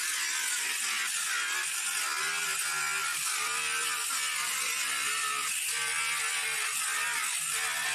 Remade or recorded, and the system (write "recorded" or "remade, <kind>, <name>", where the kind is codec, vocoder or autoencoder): recorded